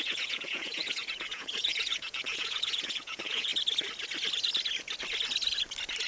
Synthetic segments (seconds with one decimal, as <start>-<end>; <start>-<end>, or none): 0.0-3.5